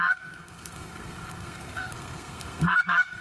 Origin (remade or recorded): remade